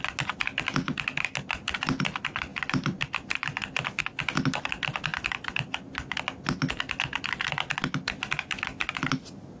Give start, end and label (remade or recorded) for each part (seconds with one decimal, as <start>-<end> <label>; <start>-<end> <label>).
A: 0.0-9.6 recorded